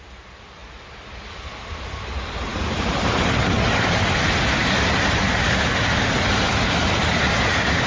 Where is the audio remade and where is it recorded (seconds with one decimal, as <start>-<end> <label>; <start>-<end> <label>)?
0.0-7.9 recorded